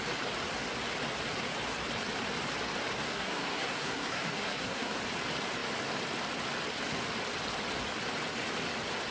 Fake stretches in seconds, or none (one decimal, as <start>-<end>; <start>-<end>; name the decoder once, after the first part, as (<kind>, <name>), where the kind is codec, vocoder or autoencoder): 3.0-5.0 (codec, SNAC)